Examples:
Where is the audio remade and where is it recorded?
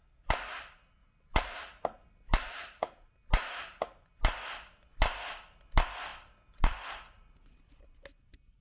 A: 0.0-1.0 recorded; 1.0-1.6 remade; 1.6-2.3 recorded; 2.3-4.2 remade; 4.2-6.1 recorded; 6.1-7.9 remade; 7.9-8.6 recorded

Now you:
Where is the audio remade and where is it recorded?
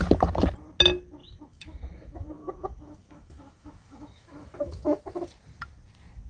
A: 0.0-1.2 recorded; 1.2-5.0 remade; 5.0-6.3 recorded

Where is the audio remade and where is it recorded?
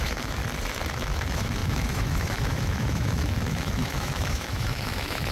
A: 0.0-0.4 remade; 0.4-0.9 recorded; 0.9-5.3 remade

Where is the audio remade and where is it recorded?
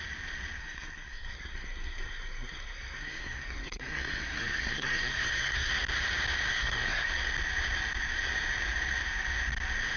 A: 0.0-0.6 recorded; 0.6-5.7 remade; 5.7-6.5 recorded; 6.5-7.1 remade; 7.1-10.0 recorded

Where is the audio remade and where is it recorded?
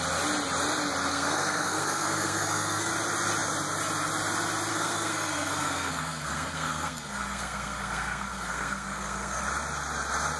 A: 0.0-1.1 recorded; 1.1-2.9 remade; 2.9-4.7 recorded; 4.7-9.4 remade; 9.4-10.4 recorded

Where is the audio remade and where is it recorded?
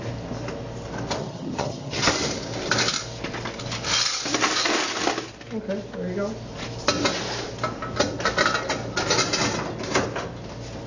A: 0.0-1.2 recorded; 1.2-2.1 remade; 2.1-10.9 recorded